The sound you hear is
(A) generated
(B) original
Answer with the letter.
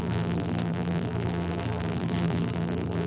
A